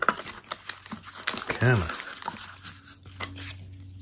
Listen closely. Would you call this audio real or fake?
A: real